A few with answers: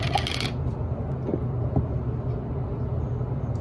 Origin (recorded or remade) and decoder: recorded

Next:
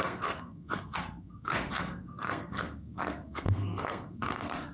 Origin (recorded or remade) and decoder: remade, codec, SNAC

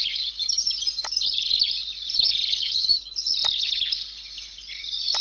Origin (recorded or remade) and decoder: recorded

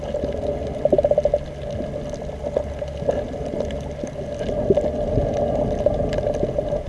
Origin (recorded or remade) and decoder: recorded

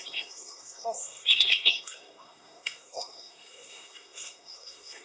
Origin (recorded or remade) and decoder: remade, codec, SNAC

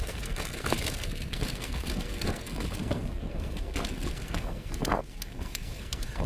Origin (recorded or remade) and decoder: remade, codec, SNAC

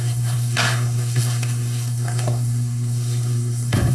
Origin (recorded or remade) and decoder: remade, codec, SNAC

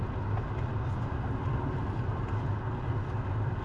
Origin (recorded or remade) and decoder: recorded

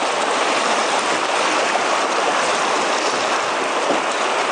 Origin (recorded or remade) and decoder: recorded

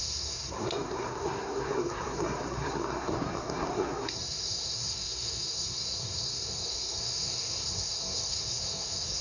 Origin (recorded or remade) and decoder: remade, codec, SNAC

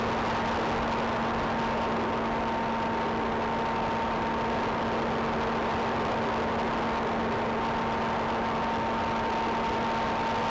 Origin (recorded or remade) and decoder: recorded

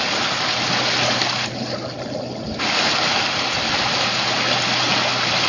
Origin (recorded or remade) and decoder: recorded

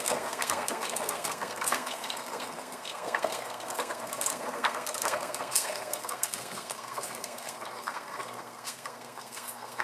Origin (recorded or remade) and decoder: remade, codec, SNAC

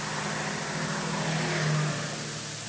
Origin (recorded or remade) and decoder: recorded